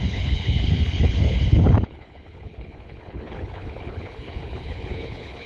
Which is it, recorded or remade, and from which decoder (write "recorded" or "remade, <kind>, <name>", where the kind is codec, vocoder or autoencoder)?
remade, codec, HILCodec